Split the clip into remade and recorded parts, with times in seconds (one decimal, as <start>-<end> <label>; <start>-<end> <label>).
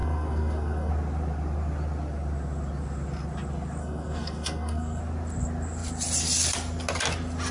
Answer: 0.0-0.9 remade; 0.9-3.8 recorded; 3.8-5.0 remade; 5.0-7.5 recorded